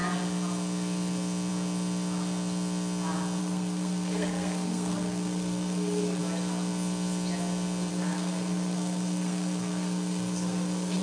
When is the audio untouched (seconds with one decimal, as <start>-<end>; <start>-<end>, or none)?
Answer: 0.0-3.4; 6.2-7.9